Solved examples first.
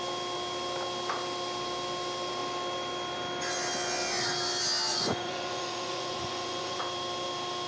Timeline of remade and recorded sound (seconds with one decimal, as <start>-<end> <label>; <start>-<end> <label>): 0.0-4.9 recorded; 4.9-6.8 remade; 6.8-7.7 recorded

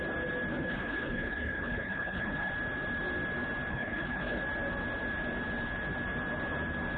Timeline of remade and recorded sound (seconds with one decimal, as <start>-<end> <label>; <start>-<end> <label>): 0.0-0.5 recorded; 0.5-2.5 remade; 2.5-3.7 recorded; 3.7-4.4 remade; 4.4-7.0 recorded

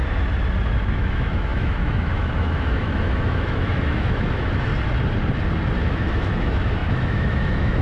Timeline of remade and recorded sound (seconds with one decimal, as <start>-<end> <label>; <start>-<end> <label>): 0.0-0.9 recorded; 0.9-4.7 remade; 4.7-5.8 recorded; 5.8-7.8 remade

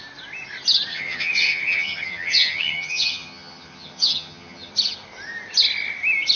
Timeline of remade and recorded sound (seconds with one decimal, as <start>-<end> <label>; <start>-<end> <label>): 0.0-0.9 recorded; 0.9-4.7 remade; 4.7-6.4 recorded

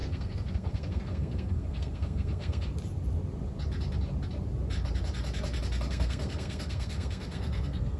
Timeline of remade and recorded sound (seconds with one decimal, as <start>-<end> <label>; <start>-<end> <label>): 0.0-2.7 remade; 2.7-5.9 recorded; 5.9-8.0 remade

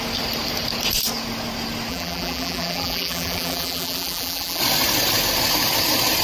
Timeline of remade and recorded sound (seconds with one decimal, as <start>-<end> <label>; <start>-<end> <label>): 0.0-1.9 recorded; 1.9-4.6 remade; 4.6-6.2 recorded